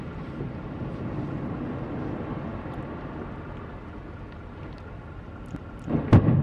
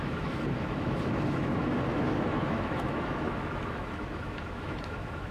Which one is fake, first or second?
second